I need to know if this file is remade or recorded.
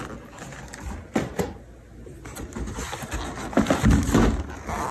recorded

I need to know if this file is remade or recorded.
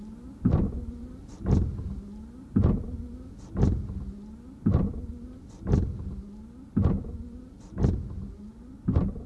recorded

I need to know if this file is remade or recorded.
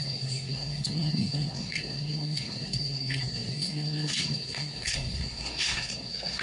remade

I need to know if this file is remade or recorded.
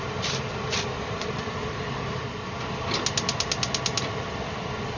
recorded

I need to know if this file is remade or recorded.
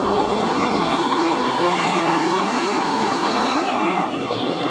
remade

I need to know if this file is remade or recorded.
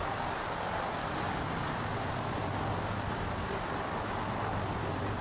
recorded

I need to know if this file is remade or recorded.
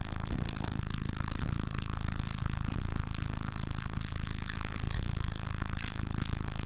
remade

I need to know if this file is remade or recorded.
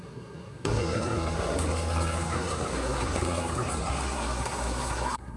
remade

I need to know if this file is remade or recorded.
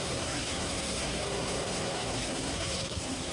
remade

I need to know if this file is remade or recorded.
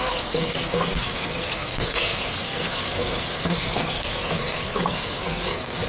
remade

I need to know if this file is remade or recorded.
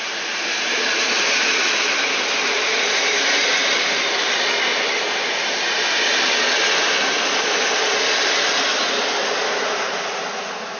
recorded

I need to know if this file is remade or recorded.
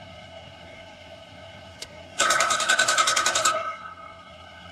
remade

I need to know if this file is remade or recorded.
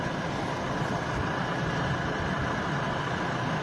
recorded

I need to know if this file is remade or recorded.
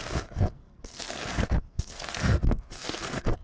remade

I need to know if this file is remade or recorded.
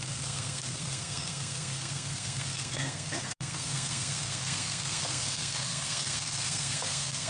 remade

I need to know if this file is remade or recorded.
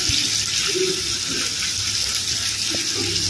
recorded